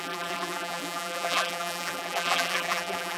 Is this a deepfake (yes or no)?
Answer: yes